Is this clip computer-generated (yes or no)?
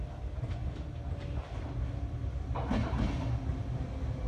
no